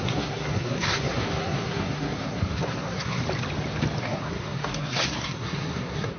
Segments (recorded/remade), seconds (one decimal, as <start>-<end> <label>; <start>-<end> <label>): 0.0-3.2 remade; 3.2-4.0 recorded; 4.0-6.2 remade